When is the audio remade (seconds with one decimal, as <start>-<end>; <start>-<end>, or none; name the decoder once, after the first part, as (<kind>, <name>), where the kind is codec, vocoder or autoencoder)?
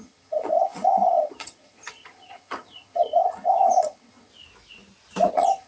0.0-4.3 (vocoder, HiFi-GAN); 5.3-5.7